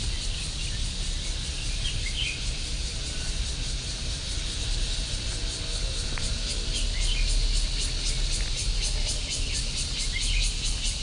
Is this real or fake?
real